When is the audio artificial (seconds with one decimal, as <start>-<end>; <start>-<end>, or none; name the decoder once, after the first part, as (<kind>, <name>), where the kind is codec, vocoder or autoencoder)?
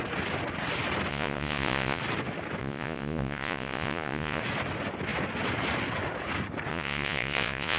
1.1-2.0 (vocoder, Vocos); 2.6-4.4; 6.7-7.8